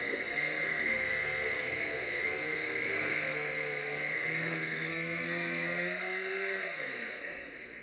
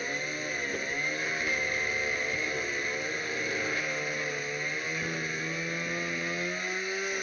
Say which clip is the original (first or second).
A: second